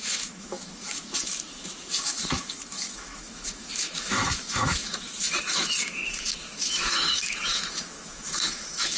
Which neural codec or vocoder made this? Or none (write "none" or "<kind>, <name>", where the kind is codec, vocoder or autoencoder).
autoencoder, DAC-VAE